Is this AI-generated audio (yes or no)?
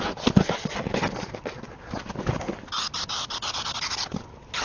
no